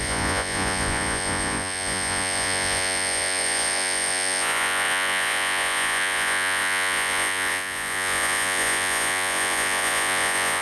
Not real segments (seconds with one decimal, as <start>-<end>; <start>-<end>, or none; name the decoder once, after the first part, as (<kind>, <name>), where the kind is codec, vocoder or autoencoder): 0.0-10.6 (vocoder, Vocos)